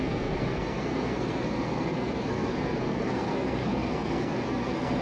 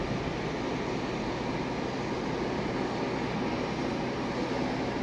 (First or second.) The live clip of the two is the second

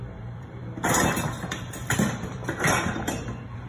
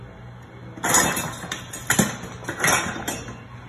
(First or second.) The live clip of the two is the second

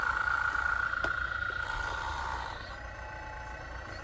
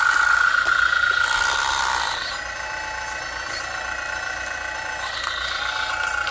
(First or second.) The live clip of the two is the second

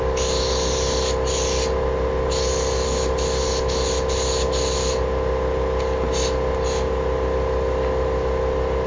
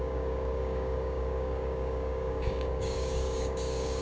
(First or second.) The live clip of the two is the first